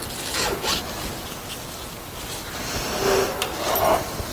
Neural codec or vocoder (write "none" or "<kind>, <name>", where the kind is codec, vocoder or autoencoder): none